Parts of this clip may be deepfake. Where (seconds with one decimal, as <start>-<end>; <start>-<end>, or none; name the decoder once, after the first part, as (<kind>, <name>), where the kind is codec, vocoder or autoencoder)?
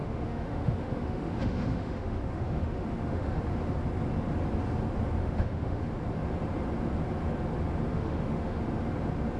0.0-3.4 (autoencoder, DAC-VAE); 5.2-5.8; 7.9-8.6